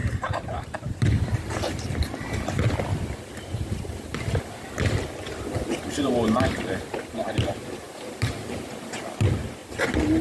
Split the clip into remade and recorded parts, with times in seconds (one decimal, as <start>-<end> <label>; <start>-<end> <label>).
0.0-0.8 remade; 0.8-5.8 recorded; 5.8-8.7 remade; 8.7-10.2 recorded